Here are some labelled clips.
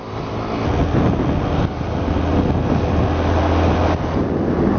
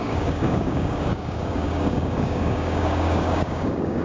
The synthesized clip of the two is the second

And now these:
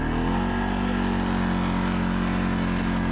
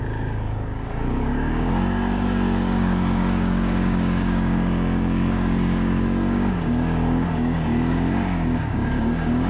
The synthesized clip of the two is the second